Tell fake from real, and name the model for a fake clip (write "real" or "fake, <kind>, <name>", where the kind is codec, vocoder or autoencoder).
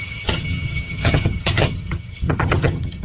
fake, vocoder, HiFi-GAN